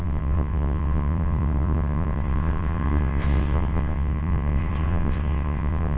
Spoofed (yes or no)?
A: yes